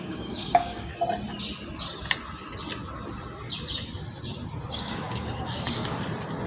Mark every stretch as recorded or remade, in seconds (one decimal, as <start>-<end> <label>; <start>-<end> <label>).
0.0-0.9 remade; 0.9-4.7 recorded; 4.7-5.8 remade; 5.8-6.5 recorded